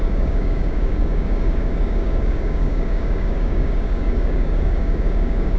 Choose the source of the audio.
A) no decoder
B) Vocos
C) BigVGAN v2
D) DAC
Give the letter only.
D